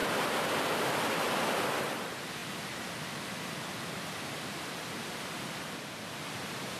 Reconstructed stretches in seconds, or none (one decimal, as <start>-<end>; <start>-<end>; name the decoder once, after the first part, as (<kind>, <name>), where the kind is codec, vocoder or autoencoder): none